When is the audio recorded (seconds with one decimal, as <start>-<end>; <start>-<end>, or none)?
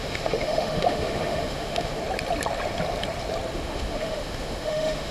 2.0-3.5